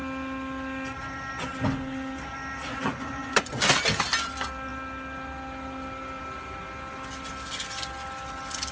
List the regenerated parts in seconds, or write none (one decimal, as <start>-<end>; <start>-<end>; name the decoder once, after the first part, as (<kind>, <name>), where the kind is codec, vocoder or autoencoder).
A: 2.6-3.5 (vocoder, Vocos)